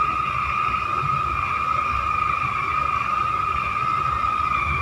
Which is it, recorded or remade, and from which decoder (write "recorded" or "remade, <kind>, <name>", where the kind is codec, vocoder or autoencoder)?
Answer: recorded